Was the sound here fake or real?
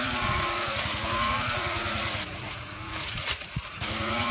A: fake